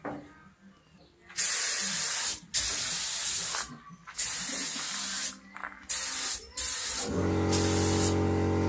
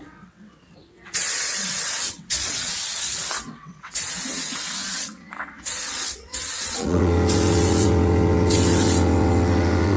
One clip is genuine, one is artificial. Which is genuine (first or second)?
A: first